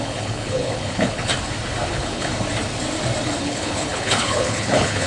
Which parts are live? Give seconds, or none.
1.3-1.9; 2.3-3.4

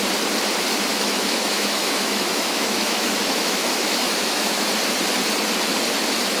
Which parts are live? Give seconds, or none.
0.0-0.9; 4.7-6.4

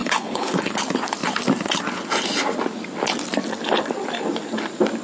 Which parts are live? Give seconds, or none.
0.7-5.0

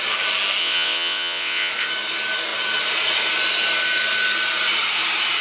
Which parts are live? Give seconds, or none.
0.0-0.6; 1.7-5.4